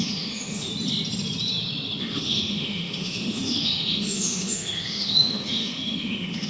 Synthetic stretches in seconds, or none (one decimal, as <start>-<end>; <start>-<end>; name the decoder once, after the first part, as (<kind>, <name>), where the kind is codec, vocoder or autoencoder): 0.0-0.7 (autoencoder, DAC-VAE); 2.0-6.5